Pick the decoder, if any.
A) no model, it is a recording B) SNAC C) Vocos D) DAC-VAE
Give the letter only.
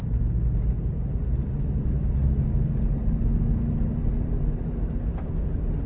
A